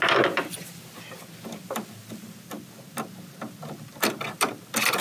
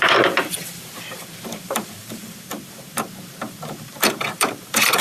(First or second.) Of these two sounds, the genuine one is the first